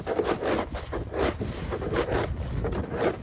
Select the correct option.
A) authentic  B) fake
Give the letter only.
A